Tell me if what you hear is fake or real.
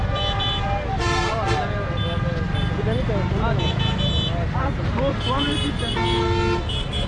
real